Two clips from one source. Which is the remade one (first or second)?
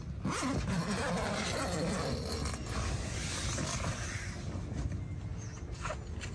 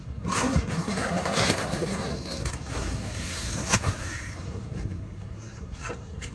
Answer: second